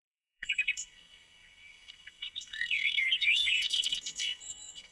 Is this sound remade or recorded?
remade